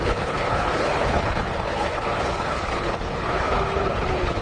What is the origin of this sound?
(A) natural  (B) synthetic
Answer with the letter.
B